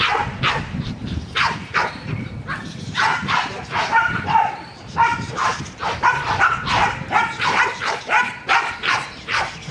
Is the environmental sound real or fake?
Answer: fake